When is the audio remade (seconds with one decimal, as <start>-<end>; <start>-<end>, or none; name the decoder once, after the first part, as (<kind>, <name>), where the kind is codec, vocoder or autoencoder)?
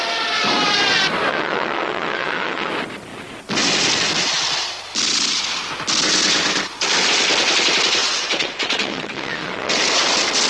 1.3-2.7 (vocoder, WaveNeXt); 8.0-9.7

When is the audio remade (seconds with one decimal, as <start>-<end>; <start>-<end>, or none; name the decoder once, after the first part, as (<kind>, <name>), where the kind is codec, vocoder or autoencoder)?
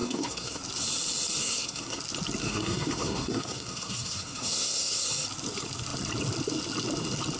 0.0-0.6 (codec, SNAC); 1.4-2.0; 2.4-5.1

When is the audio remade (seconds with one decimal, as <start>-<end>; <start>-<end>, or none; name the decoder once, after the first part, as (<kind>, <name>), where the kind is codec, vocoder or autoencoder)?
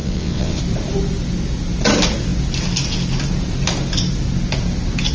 0.0-0.6 (vocoder, WaveNeXt)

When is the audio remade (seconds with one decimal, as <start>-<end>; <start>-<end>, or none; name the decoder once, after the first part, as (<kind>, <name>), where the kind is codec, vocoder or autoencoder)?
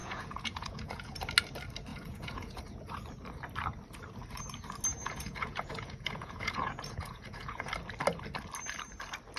0.0-1.1 (vocoder, Vocos); 1.9-2.6; 4.9-7.7